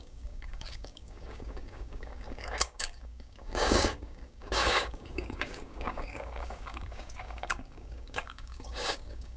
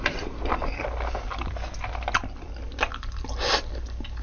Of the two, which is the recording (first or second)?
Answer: second